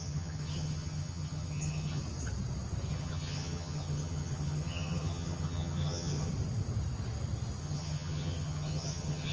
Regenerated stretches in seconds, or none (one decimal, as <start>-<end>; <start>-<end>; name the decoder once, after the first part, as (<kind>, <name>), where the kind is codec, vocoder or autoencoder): 0.0-2.0 (vocoder, HiFi-GAN); 2.9-6.3; 7.6-9.3